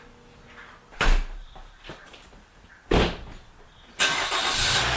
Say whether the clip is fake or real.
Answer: real